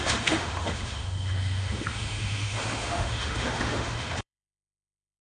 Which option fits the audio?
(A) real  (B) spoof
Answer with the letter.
B